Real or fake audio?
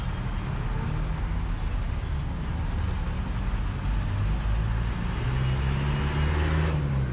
real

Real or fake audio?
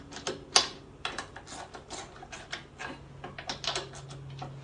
real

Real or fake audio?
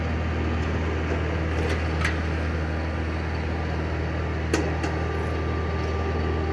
real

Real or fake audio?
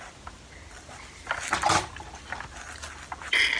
real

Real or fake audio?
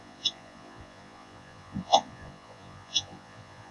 fake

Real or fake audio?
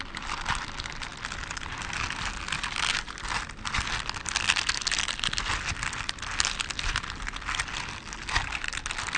real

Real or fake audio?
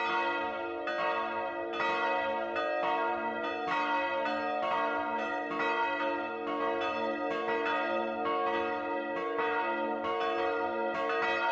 real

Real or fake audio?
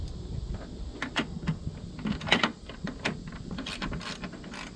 real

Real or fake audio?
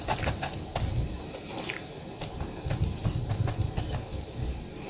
real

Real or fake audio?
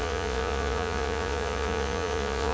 fake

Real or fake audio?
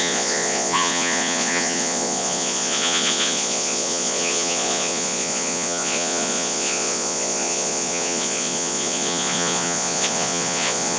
fake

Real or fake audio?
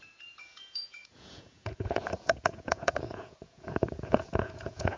fake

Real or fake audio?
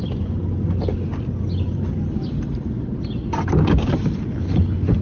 real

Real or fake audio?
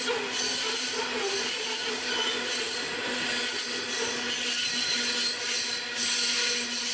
real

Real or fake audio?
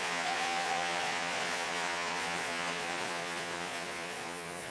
fake